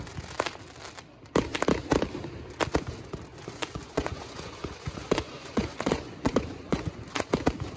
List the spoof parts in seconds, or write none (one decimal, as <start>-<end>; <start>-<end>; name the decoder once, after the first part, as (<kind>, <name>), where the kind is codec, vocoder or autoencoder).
3.3-7.3 (vocoder, Vocos)